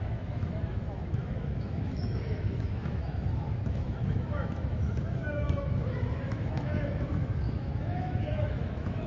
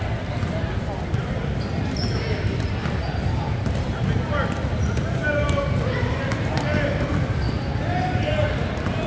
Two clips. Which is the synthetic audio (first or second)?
first